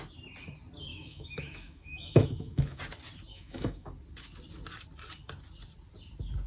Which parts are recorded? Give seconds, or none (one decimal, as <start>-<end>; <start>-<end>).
0.0-0.9; 2.8-3.3; 3.9-6.5